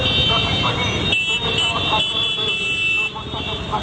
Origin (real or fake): real